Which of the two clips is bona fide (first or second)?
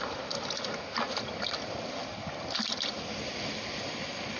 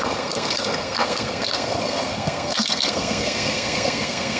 first